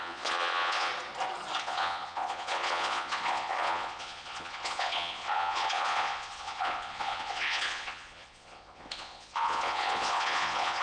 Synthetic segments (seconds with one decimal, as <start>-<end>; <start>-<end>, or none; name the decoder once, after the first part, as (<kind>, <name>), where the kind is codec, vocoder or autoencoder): 0.0-0.9 (vocoder, Vocos); 1.6-10.8